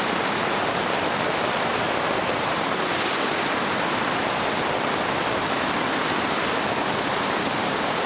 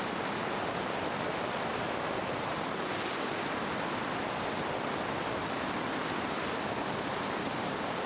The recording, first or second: second